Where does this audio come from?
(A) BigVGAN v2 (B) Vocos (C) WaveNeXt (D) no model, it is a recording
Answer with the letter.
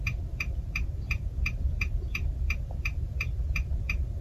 A